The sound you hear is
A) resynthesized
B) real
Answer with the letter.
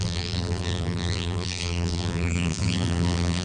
A